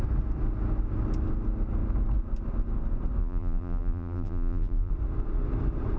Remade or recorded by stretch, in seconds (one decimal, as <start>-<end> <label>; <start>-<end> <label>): 0.0-3.2 recorded; 3.2-4.9 remade; 4.9-6.0 recorded